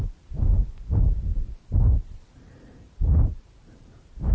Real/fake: fake